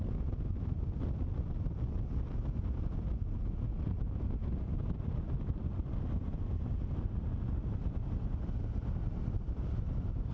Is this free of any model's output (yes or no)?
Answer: yes